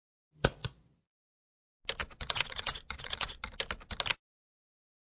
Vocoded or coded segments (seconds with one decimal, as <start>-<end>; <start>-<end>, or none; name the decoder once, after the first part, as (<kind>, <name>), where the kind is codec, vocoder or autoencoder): 0.6-1.3 (vocoder, Vocos); 2.0-3.4